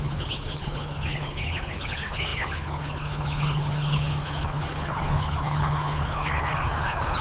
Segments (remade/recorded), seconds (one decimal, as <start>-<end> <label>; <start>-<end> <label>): 0.0-7.2 remade